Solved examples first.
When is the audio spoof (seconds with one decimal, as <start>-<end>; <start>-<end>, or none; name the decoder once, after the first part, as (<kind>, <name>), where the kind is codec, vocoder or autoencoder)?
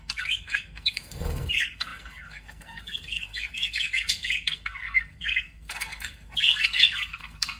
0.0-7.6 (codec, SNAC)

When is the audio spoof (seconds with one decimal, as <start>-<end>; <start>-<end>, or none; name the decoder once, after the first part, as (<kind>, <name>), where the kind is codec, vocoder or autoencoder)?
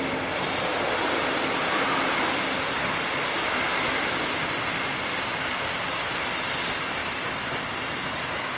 none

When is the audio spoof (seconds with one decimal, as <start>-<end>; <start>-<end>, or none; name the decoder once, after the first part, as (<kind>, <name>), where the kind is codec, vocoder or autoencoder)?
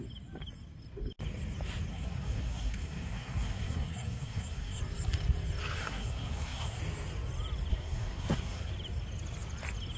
1.9-4.8 (codec, SNAC); 5.8-6.8; 7.7-8.7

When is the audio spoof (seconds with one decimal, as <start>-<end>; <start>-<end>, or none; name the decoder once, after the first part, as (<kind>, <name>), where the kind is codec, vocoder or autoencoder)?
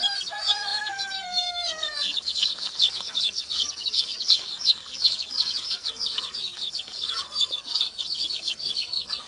0.0-9.3 (codec, SNAC)